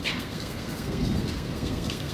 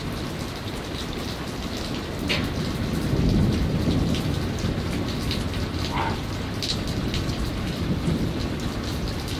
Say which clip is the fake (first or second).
first